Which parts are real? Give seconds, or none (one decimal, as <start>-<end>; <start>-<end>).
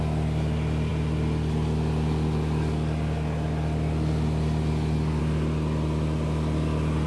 0.0-7.1